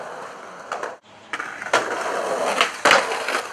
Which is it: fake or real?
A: real